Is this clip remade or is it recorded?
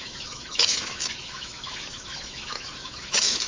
remade